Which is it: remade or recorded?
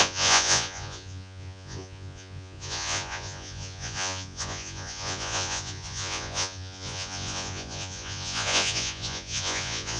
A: remade